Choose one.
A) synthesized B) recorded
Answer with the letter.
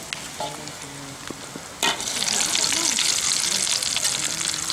B